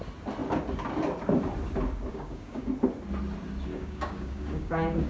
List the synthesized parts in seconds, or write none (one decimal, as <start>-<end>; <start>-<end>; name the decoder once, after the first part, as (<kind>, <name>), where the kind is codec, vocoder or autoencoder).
2.1-2.7 (codec, DAC); 3.7-5.1